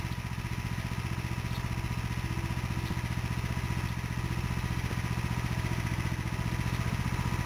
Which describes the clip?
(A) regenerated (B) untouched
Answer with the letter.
B